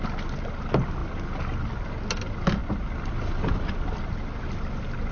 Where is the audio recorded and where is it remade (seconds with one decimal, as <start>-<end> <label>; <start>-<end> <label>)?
0.0-5.1 recorded